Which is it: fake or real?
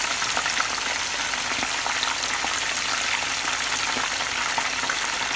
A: real